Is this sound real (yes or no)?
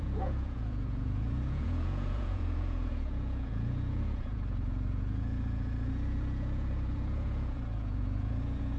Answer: no